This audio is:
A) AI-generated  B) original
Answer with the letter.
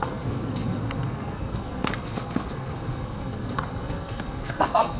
A